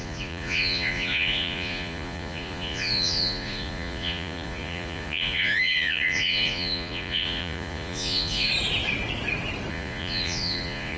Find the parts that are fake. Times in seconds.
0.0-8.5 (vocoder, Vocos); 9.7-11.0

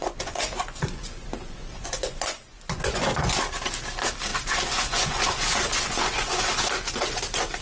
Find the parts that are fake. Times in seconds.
0.0-3.4 (vocoder, Vocos); 4.3-6.5